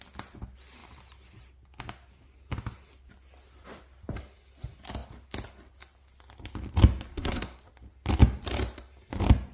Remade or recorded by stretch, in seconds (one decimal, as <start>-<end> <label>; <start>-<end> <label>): 0.0-7.1 recorded; 7.1-7.6 remade; 7.6-9.5 recorded